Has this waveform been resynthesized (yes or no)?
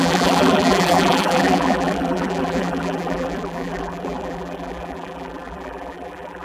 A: yes